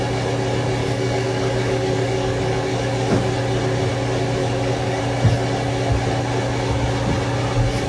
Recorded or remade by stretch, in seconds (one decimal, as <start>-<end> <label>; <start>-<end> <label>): 0.0-0.8 recorded; 0.8-3.3 remade; 3.3-4.4 recorded; 4.4-5.0 remade; 5.0-7.9 recorded